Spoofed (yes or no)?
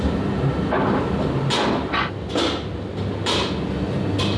no